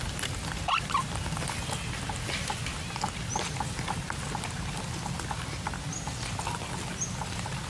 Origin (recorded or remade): recorded